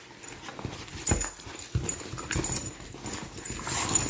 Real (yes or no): yes